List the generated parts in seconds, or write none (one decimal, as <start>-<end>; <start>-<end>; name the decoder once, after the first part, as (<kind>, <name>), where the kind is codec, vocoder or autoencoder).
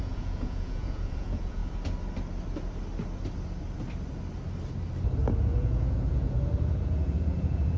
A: 0.0-1.6 (vocoder, Vocos); 5.4-7.8